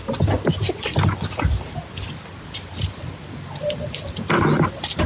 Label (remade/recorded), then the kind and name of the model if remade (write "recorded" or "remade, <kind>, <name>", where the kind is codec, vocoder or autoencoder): recorded